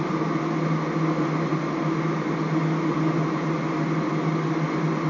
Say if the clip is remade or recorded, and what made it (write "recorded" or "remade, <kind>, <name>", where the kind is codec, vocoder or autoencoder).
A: recorded